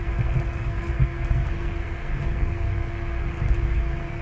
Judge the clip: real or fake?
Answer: fake